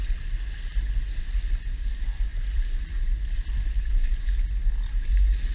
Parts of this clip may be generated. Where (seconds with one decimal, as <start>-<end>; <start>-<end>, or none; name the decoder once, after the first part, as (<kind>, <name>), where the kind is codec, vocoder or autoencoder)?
none